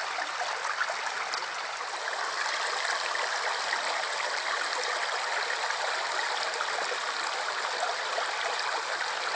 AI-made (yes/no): no